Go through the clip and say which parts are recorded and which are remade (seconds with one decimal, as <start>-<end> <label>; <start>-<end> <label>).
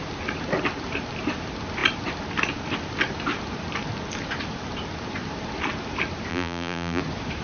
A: 0.0-6.3 recorded; 6.3-7.0 remade; 7.0-7.4 recorded